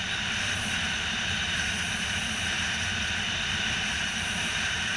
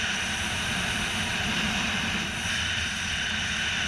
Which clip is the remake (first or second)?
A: first